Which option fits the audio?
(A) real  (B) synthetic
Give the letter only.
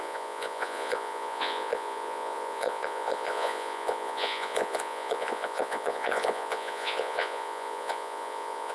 B